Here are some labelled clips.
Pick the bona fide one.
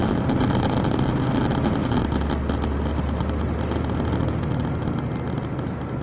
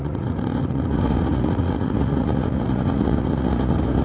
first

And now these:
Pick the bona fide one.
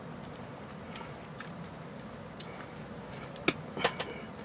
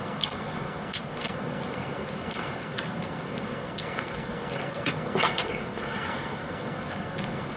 first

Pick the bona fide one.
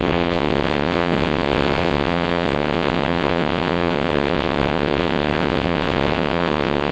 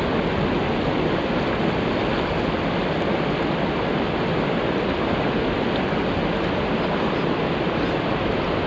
second